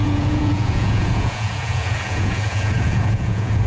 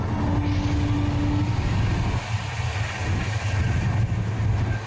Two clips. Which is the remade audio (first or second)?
first